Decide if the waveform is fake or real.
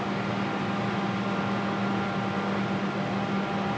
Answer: real